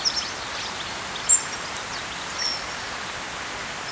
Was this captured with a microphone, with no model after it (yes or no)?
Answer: yes